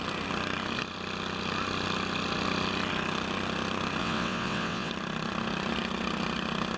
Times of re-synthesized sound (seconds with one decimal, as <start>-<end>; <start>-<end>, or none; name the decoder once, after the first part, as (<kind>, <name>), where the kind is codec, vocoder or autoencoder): 4.0-4.9 (vocoder, WaveNeXt)